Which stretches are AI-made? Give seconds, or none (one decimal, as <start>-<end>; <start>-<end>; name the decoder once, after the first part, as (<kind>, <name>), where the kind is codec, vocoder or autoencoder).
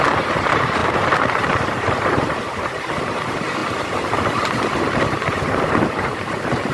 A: 0.0-3.6 (vocoder, BigVGAN v2); 4.8-6.7